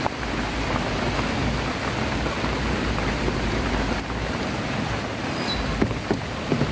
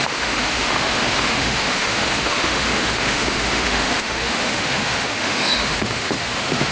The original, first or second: first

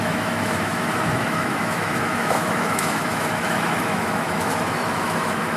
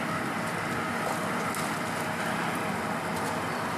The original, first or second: second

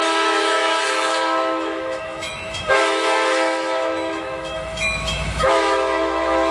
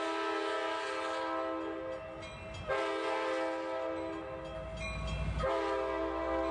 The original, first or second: second